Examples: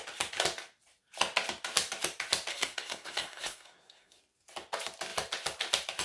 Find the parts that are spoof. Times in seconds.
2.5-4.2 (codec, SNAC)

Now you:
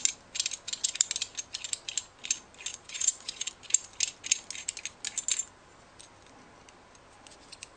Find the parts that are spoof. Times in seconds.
2.7-3.5 (vocoder, Vocos)

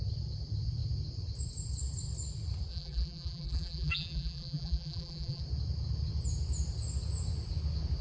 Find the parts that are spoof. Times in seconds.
2.7-5.4 (vocoder, BigVGAN v2)

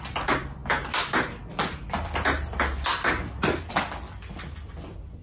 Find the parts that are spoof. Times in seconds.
none

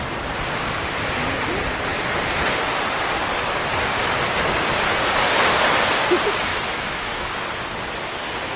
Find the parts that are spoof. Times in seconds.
6.5-7.3 (autoencoder, DAC-VAE)